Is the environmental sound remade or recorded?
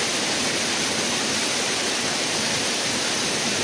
recorded